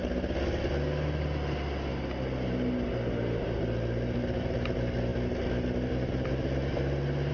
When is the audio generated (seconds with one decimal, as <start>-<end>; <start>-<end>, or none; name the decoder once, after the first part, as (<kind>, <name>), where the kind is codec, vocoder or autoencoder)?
none